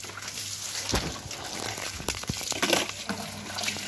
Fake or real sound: real